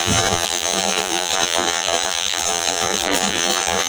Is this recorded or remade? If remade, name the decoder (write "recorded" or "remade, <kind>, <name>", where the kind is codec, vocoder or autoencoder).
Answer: remade, vocoder, BigVGAN v2